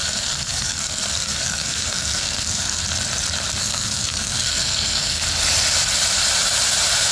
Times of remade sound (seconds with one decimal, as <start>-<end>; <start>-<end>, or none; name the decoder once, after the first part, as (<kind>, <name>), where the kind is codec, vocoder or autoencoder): 0.0-2.8 (codec, SNAC); 3.6-5.2